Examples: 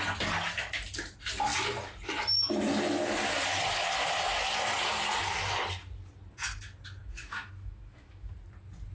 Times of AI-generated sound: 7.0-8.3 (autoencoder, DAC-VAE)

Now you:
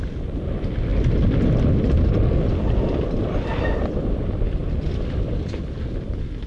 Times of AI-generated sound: 0.0-0.9 (vocoder, BigVGAN v2); 2.9-6.5

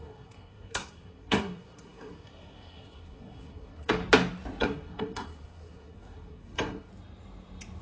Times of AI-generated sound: 0.0-4.0 (codec, SNAC); 4.6-6.9

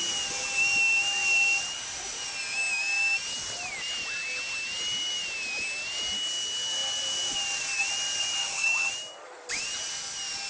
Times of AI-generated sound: 8.4-8.9 (codec, DAC)

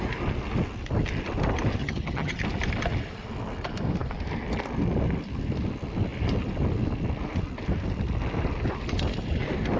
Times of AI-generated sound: 1.8-2.4 (vocoder, HiFi-GAN)

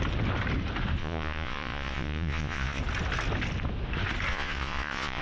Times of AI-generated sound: 1.0-2.8 (vocoder, Vocos); 4.3-5.2